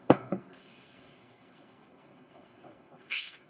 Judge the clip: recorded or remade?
remade